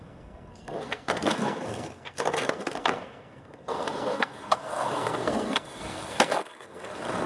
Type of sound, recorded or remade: remade